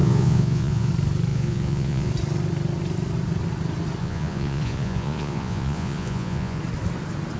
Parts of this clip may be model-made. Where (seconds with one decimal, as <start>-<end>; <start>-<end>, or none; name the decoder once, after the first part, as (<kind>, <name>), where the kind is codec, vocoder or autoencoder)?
0.0-0.9 (vocoder, Vocos); 1.3-2.1; 4.0-6.6